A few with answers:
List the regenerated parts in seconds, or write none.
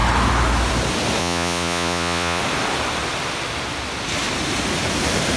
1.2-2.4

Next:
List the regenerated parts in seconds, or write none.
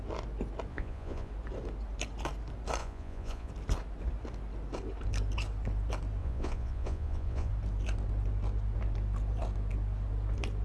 0.7-1.3; 2.8-3.5; 6.2-7.5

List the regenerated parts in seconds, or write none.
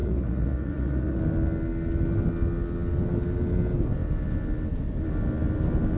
0.0-1.2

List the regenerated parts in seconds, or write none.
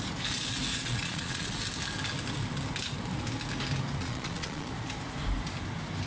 0.7-1.6; 4.0-4.7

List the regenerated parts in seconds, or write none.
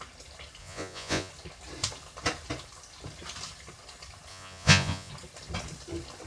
0.6-1.3; 4.3-5.1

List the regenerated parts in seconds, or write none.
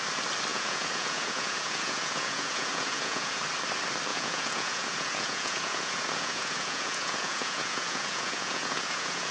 0.5-3.4; 4.1-9.3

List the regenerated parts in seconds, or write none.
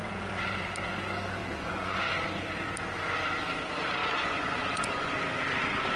0.0-0.6; 1.4-2.2; 4.0-5.1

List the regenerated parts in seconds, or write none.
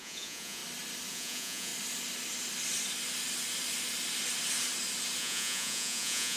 0.0-0.6; 1.1-1.7; 5.2-6.4